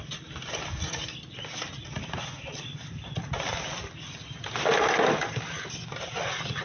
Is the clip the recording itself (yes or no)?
yes